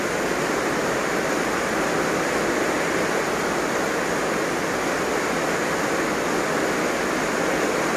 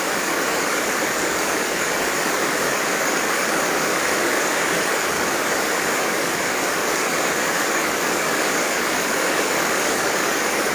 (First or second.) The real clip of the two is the first